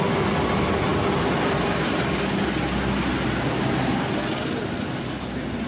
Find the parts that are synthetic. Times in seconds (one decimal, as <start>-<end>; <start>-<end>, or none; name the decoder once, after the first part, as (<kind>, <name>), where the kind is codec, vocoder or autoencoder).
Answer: none